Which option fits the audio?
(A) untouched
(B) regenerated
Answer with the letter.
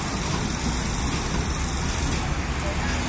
A